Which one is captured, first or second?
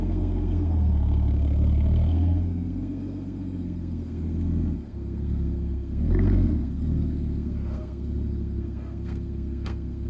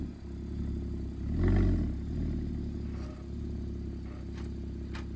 second